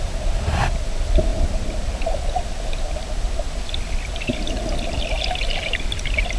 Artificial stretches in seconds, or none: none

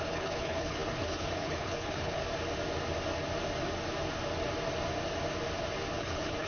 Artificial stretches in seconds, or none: 0.0-2.2 (codec, HILCodec); 6.0-6.5

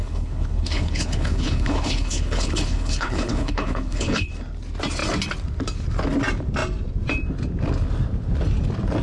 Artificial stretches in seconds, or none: 0.0-4.3 (codec, HILCodec)

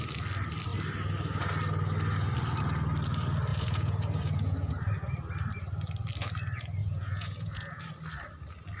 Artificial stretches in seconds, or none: 3.5-4.7 (vocoder, Vocos); 6.8-7.8